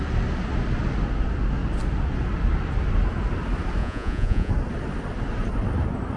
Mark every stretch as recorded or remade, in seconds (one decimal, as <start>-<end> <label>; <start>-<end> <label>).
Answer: 0.0-3.8 recorded; 3.8-4.5 remade; 4.5-6.2 recorded